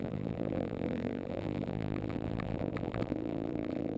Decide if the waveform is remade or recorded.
remade